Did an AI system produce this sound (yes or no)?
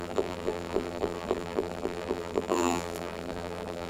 yes